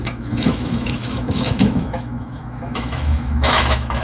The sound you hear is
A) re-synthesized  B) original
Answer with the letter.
A